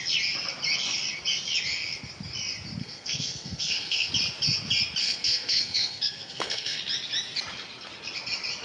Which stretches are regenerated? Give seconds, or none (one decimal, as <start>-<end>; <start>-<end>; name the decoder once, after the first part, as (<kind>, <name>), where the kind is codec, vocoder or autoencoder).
2.8-4.1 (codec, SNAC); 5.0-6.8